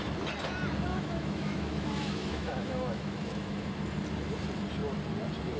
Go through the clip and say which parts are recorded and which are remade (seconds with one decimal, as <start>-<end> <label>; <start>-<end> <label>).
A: 0.0-0.9 recorded; 0.9-3.7 remade; 3.7-5.6 recorded